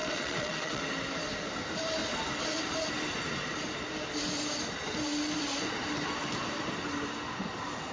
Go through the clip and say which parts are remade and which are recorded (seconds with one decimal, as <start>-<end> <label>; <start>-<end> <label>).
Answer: 0.0-0.8 remade; 0.8-7.9 recorded